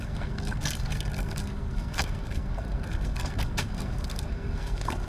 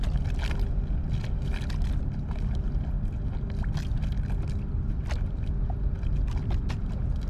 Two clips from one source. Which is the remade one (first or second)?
first